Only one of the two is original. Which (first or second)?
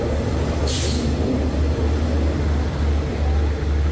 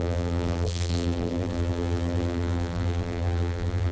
first